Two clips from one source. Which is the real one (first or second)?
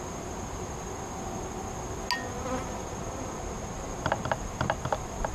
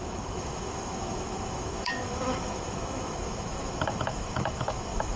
first